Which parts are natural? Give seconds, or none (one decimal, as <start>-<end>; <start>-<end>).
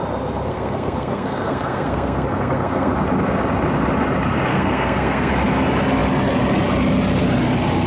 0.0-0.5; 2.9-4.5; 5.3-7.9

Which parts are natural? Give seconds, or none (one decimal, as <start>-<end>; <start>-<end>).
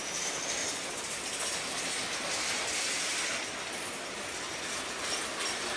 0.0-5.8